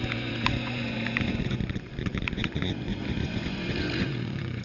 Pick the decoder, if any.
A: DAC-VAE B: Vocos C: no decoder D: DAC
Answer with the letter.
B